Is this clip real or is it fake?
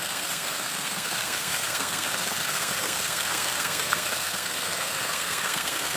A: fake